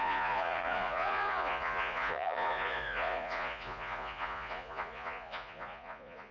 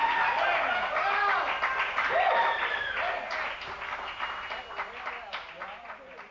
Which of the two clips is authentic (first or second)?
second